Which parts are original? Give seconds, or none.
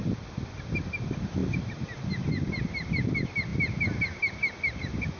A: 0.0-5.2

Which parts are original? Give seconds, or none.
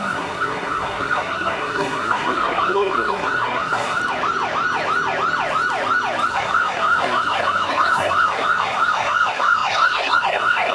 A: 4.0-6.3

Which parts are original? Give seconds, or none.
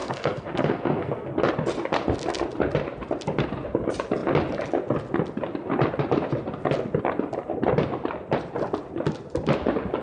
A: 1.3-10.0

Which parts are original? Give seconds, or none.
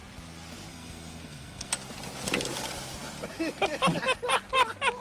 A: 0.0-0.7; 1.7-5.0